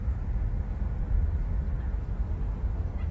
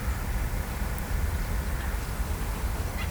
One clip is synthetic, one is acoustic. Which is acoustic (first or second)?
first